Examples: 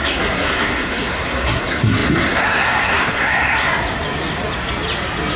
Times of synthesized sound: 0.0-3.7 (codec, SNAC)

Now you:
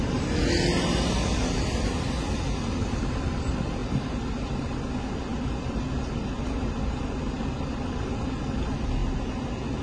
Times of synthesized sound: none

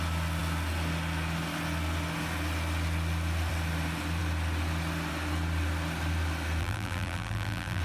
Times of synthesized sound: 6.6-7.8 (vocoder, BigVGAN v2)

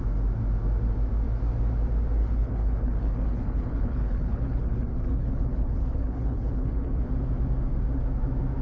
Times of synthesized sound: 2.2-7.0 (codec, HILCodec)

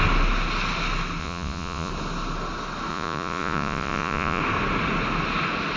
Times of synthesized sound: 1.2-1.9 (vocoder, Vocos); 2.9-4.4